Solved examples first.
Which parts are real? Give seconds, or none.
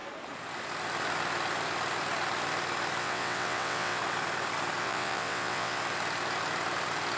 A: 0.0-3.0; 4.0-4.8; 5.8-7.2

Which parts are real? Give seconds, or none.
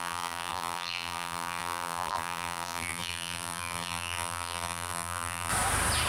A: 5.5-6.1